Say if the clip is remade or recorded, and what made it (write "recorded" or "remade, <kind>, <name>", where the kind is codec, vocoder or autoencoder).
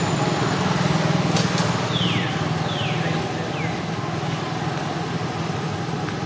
recorded